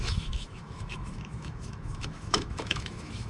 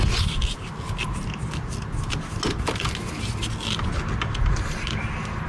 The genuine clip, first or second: second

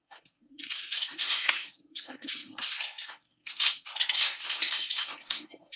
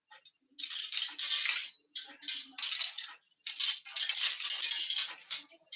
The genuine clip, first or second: second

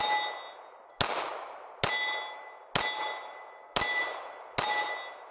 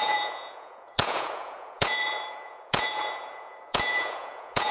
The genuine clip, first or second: first